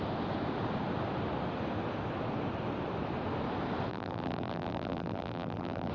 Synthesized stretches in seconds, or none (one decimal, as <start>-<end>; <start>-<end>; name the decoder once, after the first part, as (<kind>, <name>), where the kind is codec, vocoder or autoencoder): 3.9-5.9 (vocoder, BigVGAN v2)

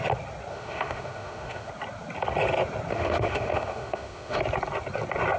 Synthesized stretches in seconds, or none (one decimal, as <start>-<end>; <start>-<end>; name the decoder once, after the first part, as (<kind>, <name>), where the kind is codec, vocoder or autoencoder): 0.5-1.7 (autoencoder, DAC-VAE); 2.9-4.4

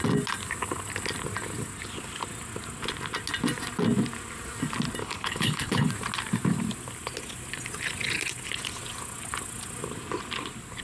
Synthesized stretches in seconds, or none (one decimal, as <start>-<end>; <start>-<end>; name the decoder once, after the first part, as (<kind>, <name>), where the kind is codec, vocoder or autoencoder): 5.0-5.9 (codec, HILCodec)

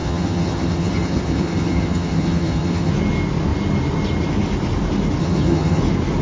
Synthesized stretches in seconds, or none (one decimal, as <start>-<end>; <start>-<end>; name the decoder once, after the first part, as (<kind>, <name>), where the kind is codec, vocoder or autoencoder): 0.0-2.9 (vocoder, HiFi-GAN); 5.2-5.8